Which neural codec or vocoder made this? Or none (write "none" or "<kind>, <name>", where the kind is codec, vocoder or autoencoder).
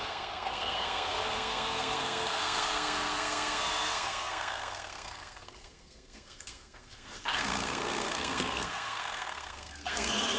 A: codec, SNAC